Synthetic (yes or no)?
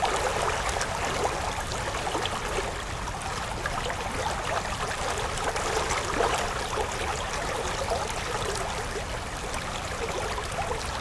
no